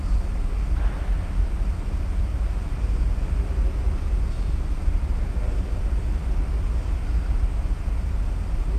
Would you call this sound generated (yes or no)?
no